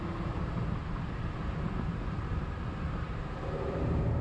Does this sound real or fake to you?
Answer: fake